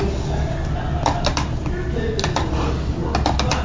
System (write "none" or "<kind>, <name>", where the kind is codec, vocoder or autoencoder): none